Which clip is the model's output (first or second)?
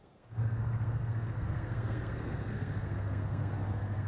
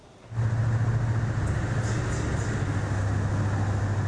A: first